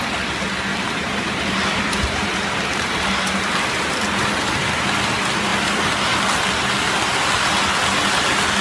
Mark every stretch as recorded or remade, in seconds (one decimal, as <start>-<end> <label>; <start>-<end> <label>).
0.0-0.7 recorded; 0.7-4.7 remade; 4.7-8.6 recorded